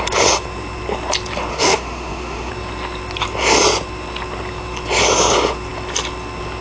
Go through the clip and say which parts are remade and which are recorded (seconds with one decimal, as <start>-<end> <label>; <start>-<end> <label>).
0.0-1.5 recorded; 1.5-2.5 remade; 2.5-6.6 recorded